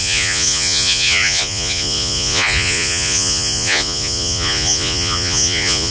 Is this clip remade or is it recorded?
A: remade